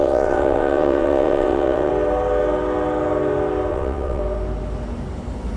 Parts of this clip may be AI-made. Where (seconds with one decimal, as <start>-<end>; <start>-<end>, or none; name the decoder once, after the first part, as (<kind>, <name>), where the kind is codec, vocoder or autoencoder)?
0.0-1.9 (vocoder, WaveNeXt); 3.7-4.2